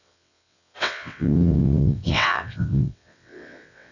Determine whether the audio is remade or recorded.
remade